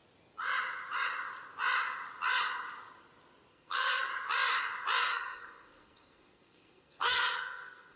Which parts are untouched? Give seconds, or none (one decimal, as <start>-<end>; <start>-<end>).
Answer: 0.0-3.5; 4.1-5.0